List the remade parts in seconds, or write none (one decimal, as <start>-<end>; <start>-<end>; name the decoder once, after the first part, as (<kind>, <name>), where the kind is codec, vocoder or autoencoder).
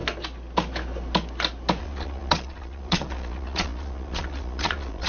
1.8-5.1 (vocoder, Vocos)